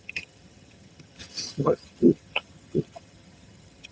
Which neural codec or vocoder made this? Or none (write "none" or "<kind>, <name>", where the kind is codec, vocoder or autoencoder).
vocoder, HiFi-GAN